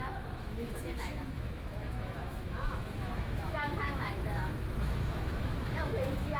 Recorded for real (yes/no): no